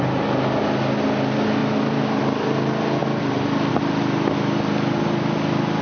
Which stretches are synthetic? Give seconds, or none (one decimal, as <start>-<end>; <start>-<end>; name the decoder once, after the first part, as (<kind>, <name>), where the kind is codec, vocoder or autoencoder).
1.6-2.2 (vocoder, BigVGAN v2)